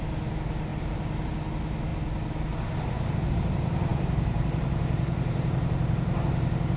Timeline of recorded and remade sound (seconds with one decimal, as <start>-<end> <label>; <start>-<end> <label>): 0.0-0.7 recorded; 0.7-1.3 remade; 1.3-3.9 recorded; 3.9-6.2 remade; 6.2-6.8 recorded